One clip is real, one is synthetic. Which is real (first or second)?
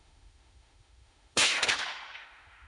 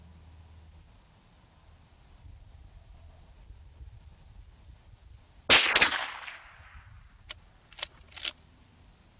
second